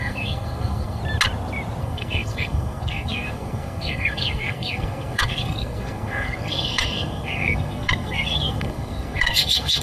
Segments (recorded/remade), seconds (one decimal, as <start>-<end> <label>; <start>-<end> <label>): 0.0-1.0 remade; 1.0-1.8 recorded; 1.8-9.8 remade